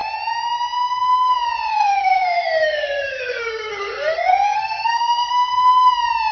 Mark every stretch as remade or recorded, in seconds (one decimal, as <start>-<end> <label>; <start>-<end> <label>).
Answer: 0.0-1.7 recorded; 1.7-5.5 remade; 5.5-6.3 recorded